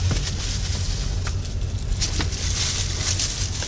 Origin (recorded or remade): recorded